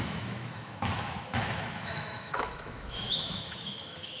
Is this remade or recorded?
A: remade